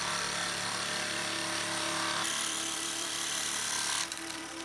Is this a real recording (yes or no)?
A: no